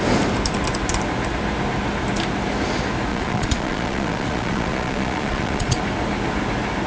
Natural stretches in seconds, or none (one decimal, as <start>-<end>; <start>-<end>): 0.0-3.1; 5.8-6.9